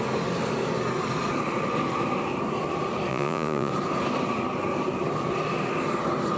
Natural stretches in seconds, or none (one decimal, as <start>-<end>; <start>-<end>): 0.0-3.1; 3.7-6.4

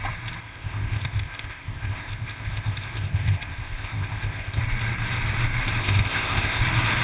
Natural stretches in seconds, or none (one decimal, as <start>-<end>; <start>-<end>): 0.0-0.4; 4.6-5.8; 6.6-7.0

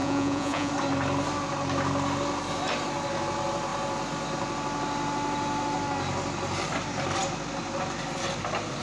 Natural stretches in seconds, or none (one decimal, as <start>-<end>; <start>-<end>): 0.7-8.8